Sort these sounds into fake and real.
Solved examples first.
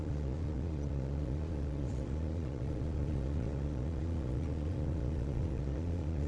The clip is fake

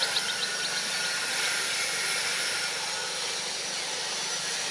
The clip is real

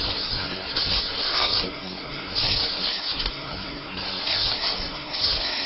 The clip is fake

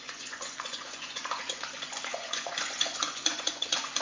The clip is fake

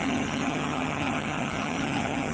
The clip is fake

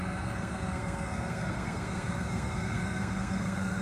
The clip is fake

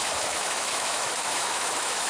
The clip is fake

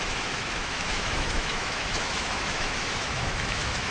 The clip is fake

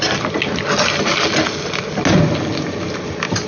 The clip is real